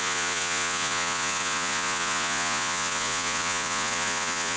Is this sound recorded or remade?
remade